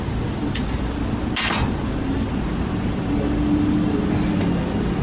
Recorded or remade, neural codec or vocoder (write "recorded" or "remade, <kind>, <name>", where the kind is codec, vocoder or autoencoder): recorded